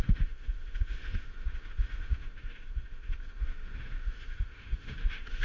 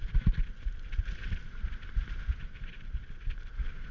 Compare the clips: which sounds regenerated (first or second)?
first